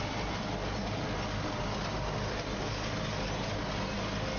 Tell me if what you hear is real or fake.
real